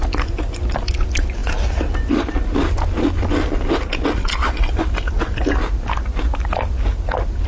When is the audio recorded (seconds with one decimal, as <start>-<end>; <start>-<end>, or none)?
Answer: 0.0-7.5